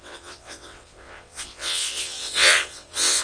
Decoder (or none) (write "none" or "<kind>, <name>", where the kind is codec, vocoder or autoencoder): vocoder, WaveNeXt